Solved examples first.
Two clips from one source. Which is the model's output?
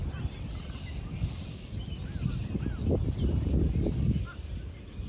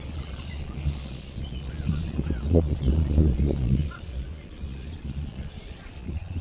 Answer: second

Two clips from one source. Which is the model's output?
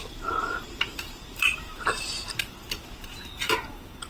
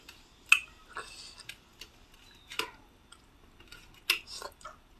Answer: first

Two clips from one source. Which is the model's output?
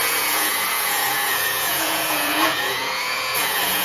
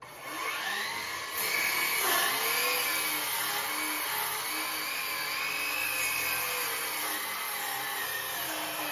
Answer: first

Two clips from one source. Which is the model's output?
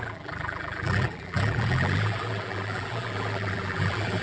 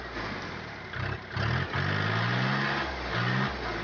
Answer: first